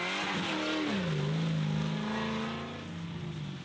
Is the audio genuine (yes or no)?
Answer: yes